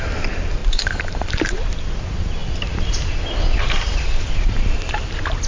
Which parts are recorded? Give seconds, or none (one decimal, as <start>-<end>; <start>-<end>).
0.0-0.6; 1.8-2.4; 5.1-5.5